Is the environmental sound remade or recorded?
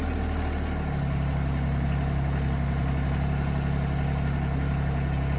recorded